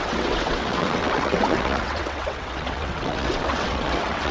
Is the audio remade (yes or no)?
yes